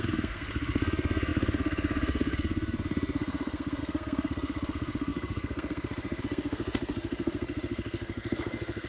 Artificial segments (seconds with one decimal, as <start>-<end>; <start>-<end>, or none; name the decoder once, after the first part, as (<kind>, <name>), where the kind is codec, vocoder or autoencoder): 0.0-8.9 (codec, SNAC)